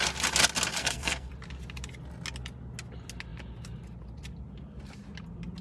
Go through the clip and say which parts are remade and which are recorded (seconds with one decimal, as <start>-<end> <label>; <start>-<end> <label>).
0.0-0.7 recorded; 0.7-1.3 remade; 1.3-5.6 recorded